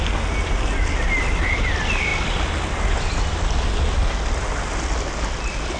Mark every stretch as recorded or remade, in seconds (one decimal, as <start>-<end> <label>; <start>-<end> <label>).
0.0-5.8 recorded